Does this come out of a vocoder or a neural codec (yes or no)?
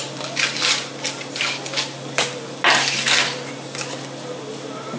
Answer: no